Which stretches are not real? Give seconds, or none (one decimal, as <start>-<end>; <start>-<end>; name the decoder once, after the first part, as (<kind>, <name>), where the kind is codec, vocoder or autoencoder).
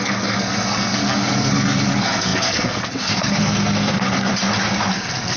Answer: 0.0-4.3 (codec, SNAC); 4.9-5.4